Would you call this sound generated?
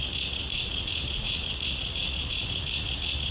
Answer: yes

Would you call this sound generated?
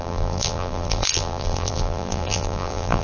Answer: yes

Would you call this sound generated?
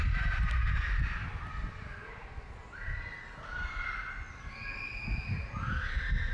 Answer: no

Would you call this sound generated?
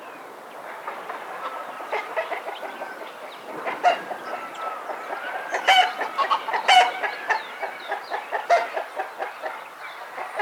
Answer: yes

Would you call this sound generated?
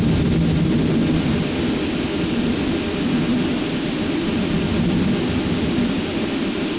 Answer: no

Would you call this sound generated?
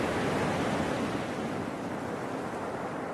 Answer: no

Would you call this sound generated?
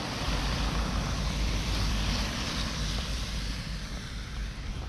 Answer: yes